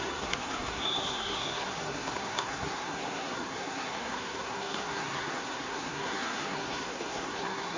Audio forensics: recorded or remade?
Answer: remade